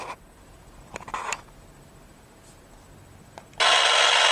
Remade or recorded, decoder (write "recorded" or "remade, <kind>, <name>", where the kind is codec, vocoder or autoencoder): recorded